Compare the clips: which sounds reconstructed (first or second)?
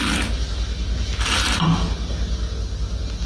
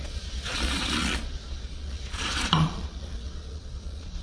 second